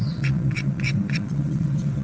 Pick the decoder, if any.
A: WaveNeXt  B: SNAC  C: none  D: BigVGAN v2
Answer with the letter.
A